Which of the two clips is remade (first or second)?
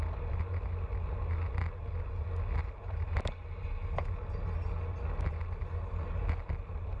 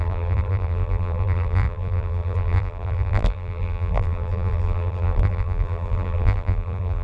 second